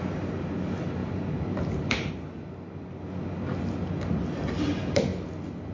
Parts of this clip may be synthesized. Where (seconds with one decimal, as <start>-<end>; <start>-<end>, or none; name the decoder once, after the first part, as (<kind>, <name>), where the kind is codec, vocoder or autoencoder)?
1.0-2.1 (vocoder, BigVGAN v2)